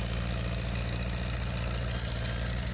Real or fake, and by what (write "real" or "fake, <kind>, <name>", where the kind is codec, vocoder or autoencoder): real